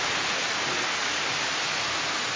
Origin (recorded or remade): recorded